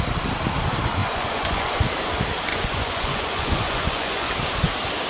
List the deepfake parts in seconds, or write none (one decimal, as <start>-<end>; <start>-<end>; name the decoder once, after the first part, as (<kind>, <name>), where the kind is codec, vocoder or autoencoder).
1.0-1.8 (vocoder, Vocos); 2.5-4.3